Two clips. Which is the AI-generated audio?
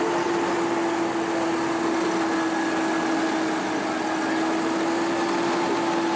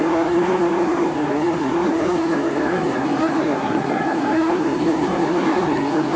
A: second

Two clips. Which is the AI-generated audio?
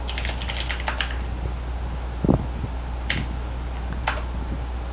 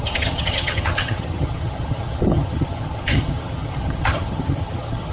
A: second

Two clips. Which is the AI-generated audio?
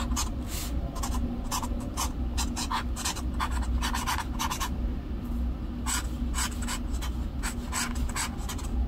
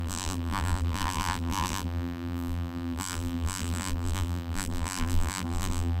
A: second